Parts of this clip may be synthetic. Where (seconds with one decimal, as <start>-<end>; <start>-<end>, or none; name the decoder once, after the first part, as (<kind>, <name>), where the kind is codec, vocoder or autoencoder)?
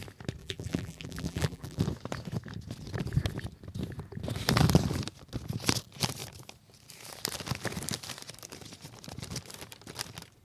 0.4-1.8 (vocoder, BigVGAN v2)